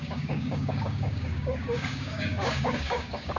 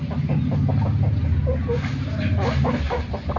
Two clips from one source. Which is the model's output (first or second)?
first